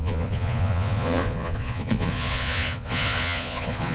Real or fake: fake